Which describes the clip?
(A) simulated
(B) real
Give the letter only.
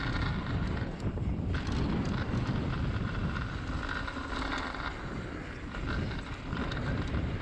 B